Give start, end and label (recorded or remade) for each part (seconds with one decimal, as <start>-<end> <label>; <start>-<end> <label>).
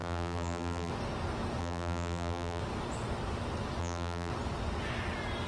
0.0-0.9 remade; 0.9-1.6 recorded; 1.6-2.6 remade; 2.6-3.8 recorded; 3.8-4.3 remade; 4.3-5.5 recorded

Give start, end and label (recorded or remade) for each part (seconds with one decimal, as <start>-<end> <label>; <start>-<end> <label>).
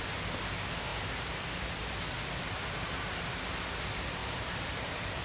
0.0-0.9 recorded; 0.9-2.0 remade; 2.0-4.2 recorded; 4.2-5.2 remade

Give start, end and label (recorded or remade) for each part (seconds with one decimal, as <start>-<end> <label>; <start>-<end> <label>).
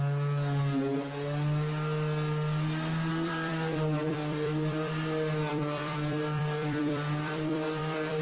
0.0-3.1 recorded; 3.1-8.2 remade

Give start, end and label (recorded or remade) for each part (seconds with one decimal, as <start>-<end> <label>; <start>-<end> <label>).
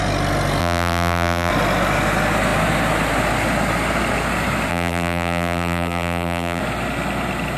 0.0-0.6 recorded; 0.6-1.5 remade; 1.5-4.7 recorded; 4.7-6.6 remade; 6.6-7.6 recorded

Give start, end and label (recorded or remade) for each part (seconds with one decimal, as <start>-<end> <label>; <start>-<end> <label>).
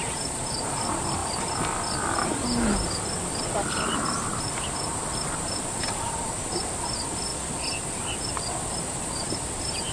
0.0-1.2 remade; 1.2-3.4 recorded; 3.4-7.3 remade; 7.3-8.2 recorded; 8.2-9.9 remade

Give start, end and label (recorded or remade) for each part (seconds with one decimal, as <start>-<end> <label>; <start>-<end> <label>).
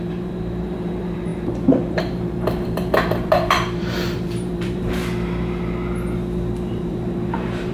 0.0-5.0 remade; 5.0-6.7 recorded; 6.7-7.7 remade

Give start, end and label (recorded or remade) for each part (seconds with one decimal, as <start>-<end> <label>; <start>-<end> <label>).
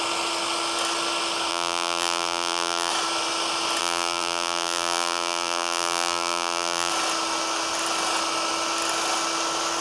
0.0-1.5 recorded; 1.5-2.9 remade; 2.9-3.8 recorded; 3.8-6.9 remade; 6.9-9.8 recorded